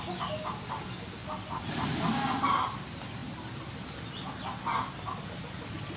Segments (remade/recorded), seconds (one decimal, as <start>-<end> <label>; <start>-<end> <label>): 0.0-6.0 recorded